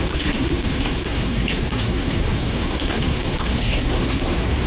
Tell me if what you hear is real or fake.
fake